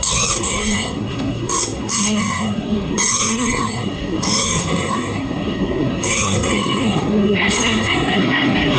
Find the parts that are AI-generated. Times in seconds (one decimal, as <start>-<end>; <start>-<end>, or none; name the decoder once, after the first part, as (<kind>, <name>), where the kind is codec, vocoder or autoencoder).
0.0-8.8 (codec, SNAC)